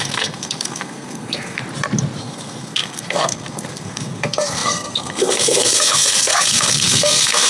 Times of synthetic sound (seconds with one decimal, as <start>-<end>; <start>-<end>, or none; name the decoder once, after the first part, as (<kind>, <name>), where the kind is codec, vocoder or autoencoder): 0.0-1.6 (codec, SNAC); 2.2-7.5